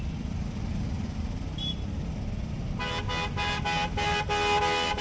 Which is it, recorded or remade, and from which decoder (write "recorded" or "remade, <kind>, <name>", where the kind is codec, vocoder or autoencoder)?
recorded